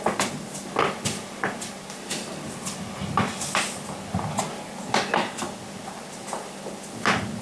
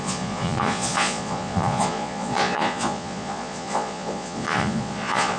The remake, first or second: second